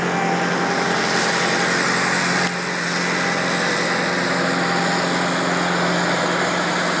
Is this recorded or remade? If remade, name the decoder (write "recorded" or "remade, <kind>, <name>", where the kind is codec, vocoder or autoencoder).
recorded